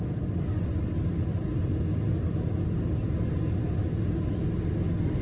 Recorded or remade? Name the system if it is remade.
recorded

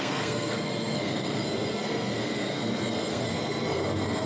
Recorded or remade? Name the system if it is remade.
remade, codec, SNAC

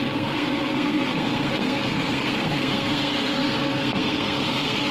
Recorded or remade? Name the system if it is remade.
remade, codec, SNAC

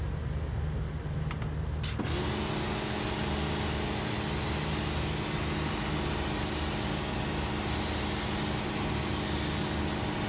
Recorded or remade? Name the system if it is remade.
recorded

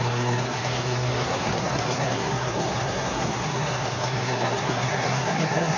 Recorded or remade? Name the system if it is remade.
remade, codec, SNAC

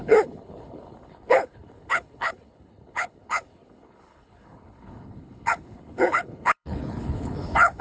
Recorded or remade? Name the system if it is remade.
remade, codec, HILCodec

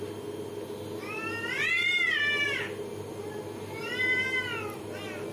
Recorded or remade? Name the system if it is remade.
recorded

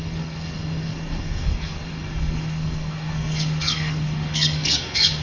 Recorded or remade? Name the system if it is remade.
remade, codec, SNAC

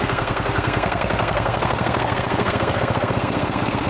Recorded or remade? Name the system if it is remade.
remade, codec, SNAC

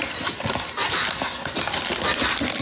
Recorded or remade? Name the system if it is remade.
recorded